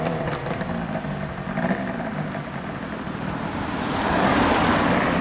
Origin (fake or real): real